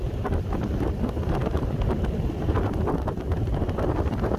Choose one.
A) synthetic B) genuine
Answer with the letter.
A